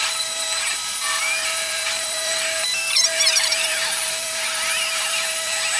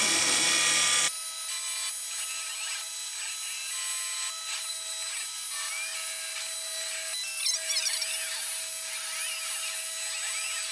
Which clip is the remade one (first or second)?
first